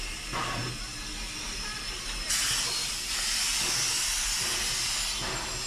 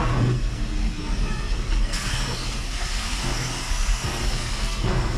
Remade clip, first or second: second